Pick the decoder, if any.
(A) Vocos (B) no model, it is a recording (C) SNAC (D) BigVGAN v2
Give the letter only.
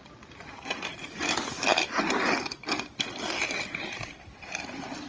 B